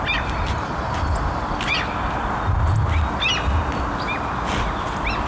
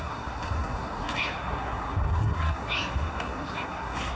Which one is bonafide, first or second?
first